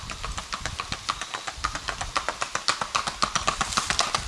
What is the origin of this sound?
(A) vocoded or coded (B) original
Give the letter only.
B